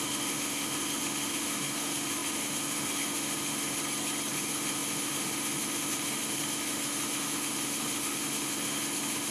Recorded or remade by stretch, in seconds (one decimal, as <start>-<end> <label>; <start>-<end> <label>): 0.0-3.8 remade; 3.8-4.3 recorded; 4.3-9.3 remade